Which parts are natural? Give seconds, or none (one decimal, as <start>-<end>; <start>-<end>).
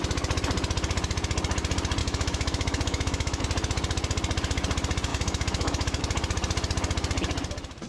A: 0.0-2.0; 3.4-5.1; 6.0-7.9